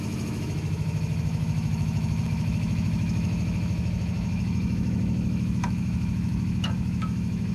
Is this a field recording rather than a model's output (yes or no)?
no